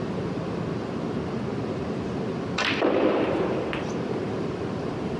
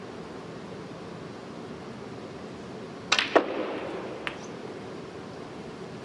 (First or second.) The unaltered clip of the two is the second